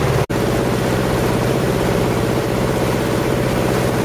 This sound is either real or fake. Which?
real